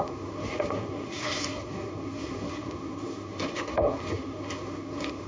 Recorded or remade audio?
remade